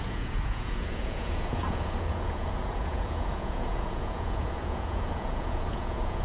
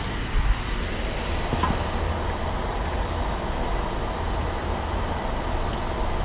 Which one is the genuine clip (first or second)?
second